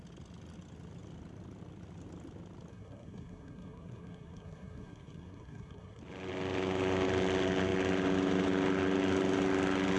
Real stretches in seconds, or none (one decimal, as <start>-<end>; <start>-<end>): 0.0-2.7; 6.0-10.0